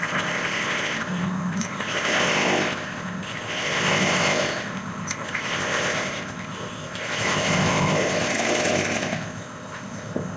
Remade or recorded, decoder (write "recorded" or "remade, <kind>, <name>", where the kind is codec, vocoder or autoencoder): remade, codec, ZipCodec